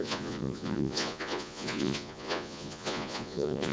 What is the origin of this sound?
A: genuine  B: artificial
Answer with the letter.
B